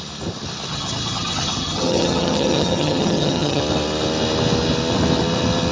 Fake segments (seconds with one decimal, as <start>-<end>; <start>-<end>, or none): 0.7-3.6